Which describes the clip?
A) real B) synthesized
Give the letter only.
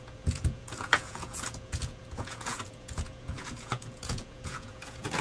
B